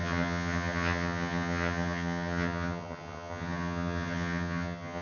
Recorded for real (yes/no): no